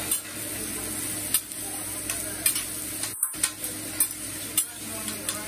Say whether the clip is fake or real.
real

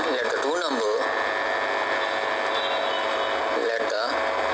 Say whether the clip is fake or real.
real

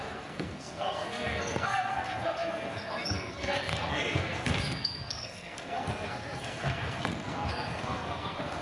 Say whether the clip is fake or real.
fake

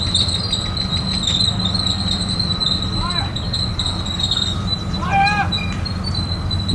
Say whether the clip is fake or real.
real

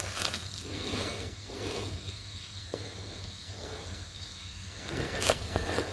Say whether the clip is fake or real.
fake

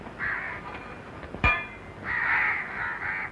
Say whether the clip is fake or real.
real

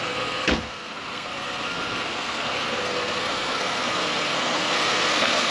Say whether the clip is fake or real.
fake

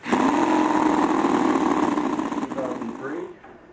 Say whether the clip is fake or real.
real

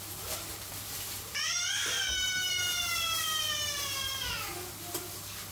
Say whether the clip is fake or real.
real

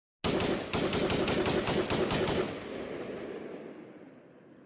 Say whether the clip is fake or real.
real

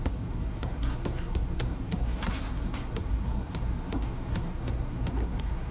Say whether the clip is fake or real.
fake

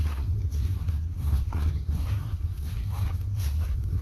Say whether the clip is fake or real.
fake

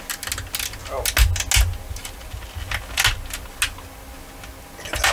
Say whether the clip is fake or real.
real